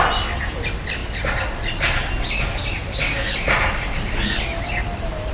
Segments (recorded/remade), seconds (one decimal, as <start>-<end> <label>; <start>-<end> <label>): 0.0-5.3 recorded